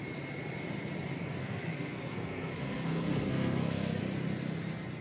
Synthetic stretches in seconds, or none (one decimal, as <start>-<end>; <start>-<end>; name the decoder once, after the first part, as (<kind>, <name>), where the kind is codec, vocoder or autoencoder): 1.4-4.0 (codec, SNAC)